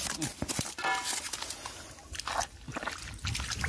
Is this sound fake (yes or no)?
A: no